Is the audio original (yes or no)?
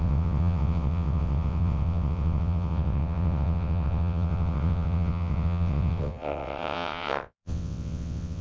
no